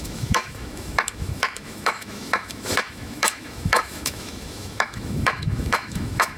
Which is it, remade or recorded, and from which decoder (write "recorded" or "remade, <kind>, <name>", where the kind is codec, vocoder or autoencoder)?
remade, autoencoder, DAC-VAE